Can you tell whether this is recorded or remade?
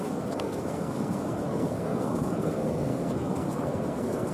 remade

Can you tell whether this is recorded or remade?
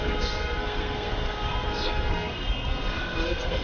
remade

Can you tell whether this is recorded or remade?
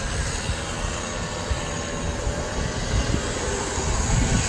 recorded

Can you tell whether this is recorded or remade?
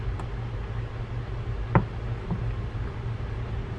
recorded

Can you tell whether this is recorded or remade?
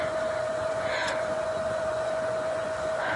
remade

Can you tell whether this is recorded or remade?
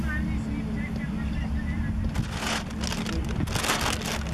recorded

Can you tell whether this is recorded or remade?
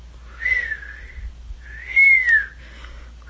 recorded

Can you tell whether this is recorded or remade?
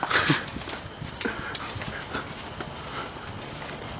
recorded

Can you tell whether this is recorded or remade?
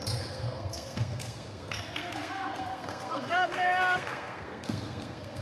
remade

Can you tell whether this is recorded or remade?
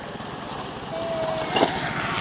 recorded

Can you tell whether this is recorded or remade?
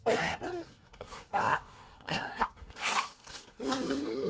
remade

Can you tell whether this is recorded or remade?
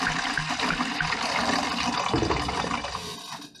recorded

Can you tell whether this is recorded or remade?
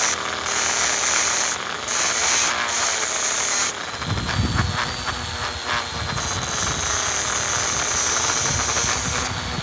recorded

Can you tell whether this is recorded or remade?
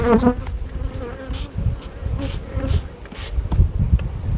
recorded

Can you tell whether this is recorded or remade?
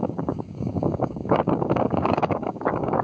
remade